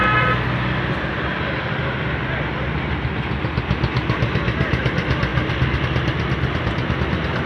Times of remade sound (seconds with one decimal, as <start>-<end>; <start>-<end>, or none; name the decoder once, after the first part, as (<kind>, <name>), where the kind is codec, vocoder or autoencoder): none